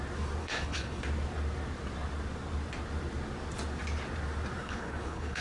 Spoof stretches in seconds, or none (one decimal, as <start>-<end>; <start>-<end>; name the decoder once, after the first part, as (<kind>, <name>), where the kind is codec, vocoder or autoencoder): 0.4-1.0 (codec, HILCodec); 4.6-5.4